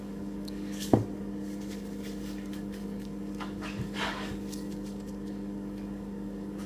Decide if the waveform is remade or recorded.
remade